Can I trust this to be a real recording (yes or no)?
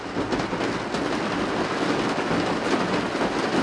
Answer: yes